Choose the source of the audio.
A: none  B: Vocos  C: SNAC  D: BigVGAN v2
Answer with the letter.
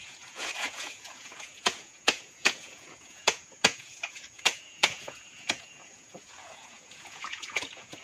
B